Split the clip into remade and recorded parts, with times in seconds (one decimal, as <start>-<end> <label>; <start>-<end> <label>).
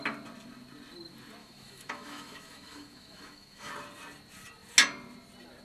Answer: 0.0-1.4 recorded; 1.4-3.7 remade; 3.7-5.6 recorded